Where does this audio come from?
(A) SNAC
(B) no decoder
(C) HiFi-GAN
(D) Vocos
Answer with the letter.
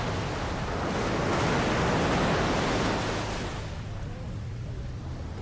B